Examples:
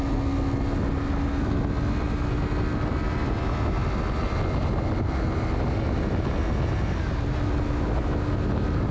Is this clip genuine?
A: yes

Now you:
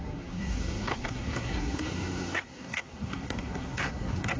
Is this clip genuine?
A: no